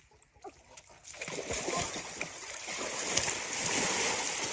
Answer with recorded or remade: recorded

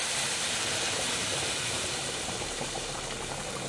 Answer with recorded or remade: remade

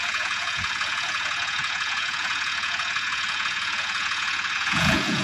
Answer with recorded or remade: remade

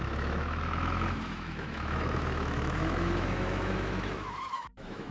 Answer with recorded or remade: remade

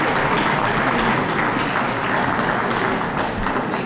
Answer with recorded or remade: recorded